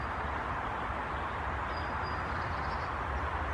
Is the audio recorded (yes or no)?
yes